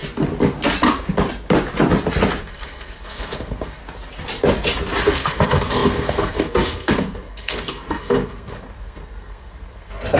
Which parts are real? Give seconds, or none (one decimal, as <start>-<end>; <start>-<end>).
0.0-2.4; 3.8-5.0